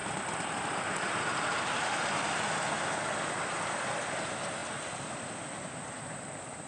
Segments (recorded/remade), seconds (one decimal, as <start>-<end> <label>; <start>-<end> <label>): 0.0-2.1 remade; 2.1-6.7 recorded